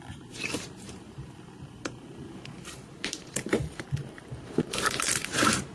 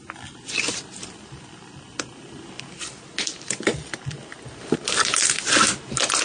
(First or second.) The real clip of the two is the second